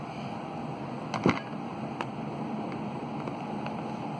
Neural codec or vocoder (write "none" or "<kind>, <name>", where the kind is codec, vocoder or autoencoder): none